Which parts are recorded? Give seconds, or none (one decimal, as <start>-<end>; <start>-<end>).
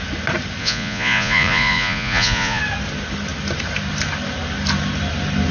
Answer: 0.0-0.6; 2.6-5.5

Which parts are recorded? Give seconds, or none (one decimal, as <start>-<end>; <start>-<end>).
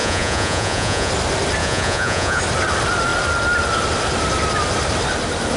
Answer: 1.1-1.6; 2.4-5.6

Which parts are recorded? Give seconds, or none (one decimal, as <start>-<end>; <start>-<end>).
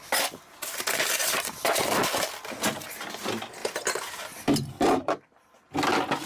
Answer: 0.0-3.6; 5.7-6.3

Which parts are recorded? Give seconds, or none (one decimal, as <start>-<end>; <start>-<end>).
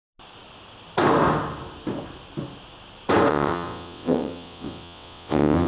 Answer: 0.0-3.3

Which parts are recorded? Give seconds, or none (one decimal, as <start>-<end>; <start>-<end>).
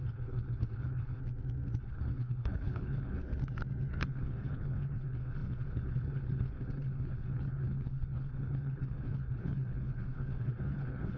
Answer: 1.2-1.8; 3.2-3.9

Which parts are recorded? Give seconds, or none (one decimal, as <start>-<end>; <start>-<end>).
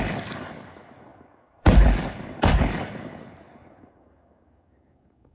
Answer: none